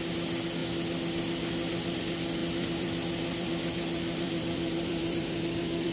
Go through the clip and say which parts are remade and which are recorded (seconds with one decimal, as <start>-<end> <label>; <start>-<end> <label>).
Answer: 0.0-2.4 recorded; 2.4-5.9 remade